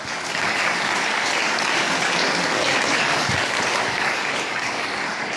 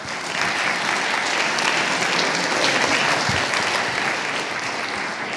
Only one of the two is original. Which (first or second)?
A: second